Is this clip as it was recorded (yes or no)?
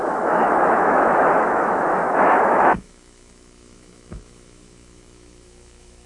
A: no